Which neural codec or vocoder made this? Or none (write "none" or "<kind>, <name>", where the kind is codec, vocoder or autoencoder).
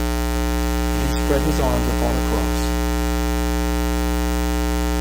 none